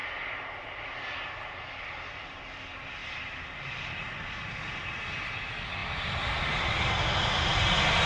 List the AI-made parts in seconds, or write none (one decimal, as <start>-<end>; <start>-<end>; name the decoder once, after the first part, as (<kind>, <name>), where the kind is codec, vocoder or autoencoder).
none